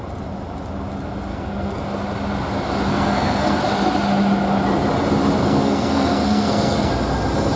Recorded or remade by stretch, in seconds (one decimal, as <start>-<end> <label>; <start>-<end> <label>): 0.0-1.3 recorded; 1.3-1.8 remade; 1.8-2.9 recorded; 2.9-3.6 remade; 3.6-5.4 recorded; 5.4-6.9 remade; 6.9-7.6 recorded